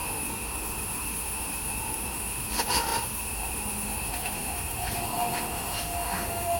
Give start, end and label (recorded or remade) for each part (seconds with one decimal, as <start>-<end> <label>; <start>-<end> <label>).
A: 0.0-6.6 remade